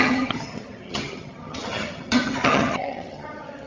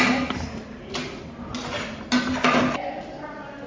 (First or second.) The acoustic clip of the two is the second